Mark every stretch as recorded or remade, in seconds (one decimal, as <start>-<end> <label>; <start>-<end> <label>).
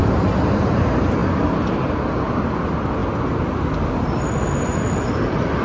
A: 0.0-5.6 recorded